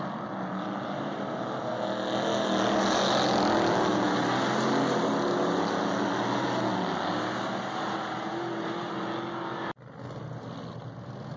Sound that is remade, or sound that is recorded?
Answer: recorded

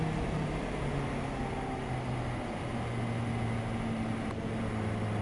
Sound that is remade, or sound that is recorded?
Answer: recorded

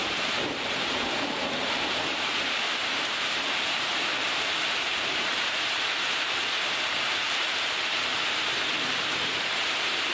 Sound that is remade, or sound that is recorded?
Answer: remade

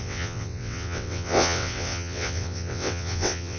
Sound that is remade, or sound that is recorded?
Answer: remade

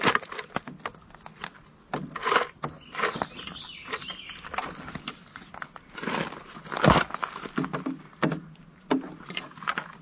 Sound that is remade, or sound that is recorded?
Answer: recorded